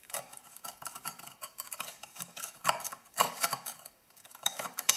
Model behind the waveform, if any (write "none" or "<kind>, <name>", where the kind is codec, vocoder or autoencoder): codec, DAC